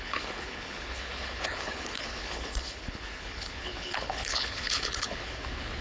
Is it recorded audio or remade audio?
remade